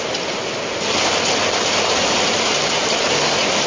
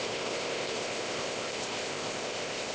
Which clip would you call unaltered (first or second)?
first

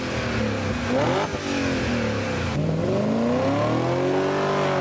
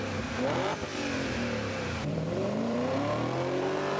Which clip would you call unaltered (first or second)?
first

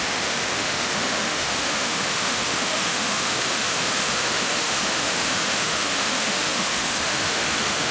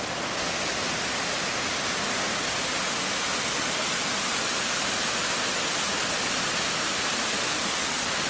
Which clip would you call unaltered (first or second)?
second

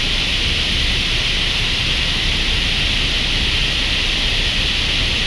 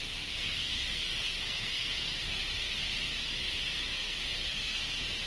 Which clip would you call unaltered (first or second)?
first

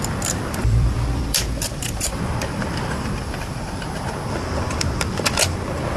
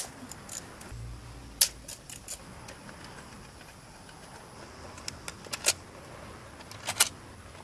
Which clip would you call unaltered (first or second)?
second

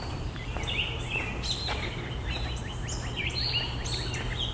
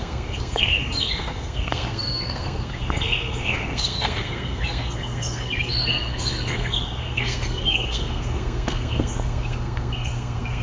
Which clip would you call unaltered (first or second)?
first